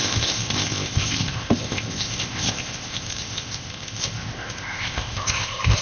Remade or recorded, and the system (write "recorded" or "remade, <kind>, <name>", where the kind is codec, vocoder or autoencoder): remade, codec, ZipCodec